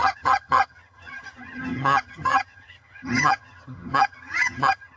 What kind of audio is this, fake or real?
fake